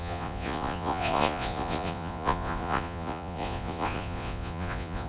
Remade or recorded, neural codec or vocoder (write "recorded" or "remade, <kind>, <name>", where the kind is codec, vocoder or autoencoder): remade, vocoder, Vocos